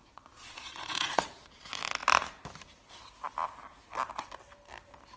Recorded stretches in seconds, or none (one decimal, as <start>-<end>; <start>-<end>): 1.6-5.2